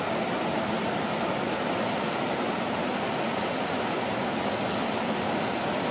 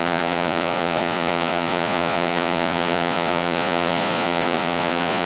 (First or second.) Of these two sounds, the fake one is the second